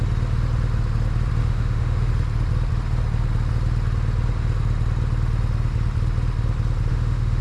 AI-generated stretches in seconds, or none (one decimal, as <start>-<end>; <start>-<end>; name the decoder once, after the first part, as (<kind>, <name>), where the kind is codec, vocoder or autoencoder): 1.4-2.1 (autoencoder, DAC-VAE); 6.9-7.4